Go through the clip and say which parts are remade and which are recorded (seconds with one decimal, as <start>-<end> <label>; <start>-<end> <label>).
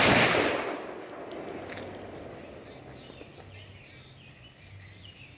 0.0-5.4 recorded